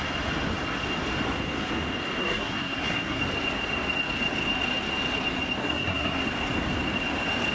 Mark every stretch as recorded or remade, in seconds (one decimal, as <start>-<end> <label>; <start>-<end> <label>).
0.0-2.2 recorded; 2.2-3.2 remade; 3.2-5.6 recorded; 5.6-6.2 remade; 6.2-7.5 recorded